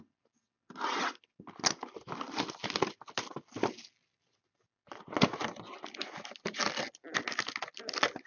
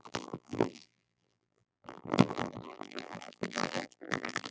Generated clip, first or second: second